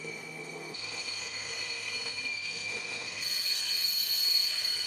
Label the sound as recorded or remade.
remade